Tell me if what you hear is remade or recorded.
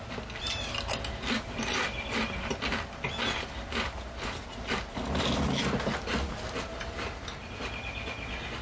recorded